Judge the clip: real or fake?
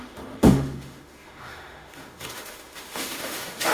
fake